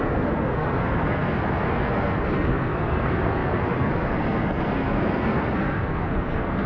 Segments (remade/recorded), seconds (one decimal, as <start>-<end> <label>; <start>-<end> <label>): 0.0-6.7 remade